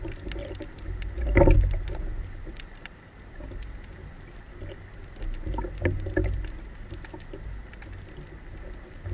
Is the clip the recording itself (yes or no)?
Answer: yes